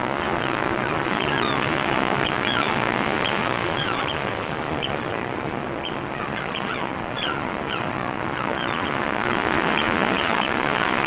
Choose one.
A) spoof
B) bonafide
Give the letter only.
A